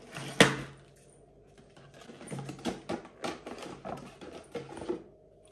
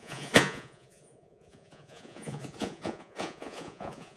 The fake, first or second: second